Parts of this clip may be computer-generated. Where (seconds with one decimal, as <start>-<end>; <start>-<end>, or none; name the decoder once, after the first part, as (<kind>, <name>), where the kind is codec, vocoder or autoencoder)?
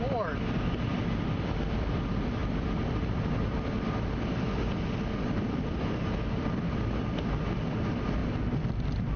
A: none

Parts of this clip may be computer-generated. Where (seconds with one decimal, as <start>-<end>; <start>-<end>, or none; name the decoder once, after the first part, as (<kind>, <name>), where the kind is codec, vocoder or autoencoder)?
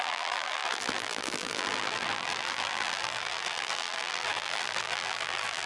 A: 0.0-5.7 (vocoder, BigVGAN v2)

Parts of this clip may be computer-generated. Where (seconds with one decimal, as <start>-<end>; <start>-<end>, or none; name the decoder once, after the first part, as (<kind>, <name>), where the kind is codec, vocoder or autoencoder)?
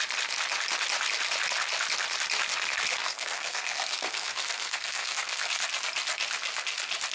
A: 3.0-5.5 (codec, SNAC)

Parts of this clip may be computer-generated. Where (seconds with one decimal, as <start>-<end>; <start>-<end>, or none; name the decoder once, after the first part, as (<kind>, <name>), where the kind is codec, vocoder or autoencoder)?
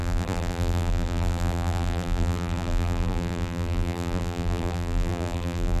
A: 0.0-5.8 (vocoder, BigVGAN v2)